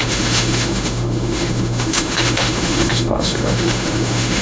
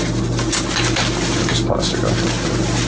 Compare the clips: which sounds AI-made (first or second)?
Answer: first